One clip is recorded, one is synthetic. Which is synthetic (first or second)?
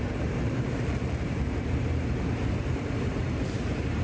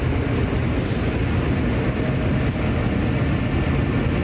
first